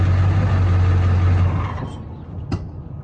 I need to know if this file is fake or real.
real